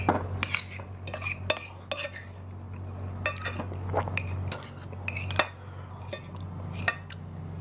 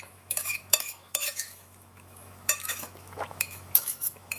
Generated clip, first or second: second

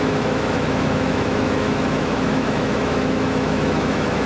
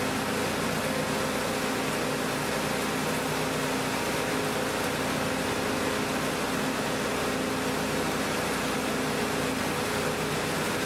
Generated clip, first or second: first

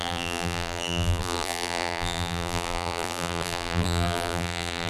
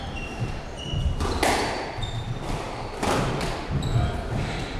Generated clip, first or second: first